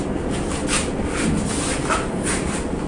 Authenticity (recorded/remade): recorded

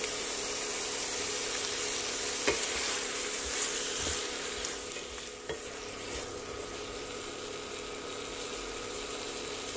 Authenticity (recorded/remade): recorded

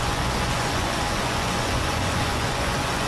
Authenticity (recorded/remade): remade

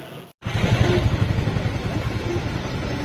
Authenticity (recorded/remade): recorded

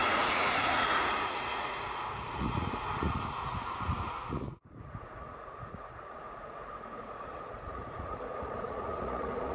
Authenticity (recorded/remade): remade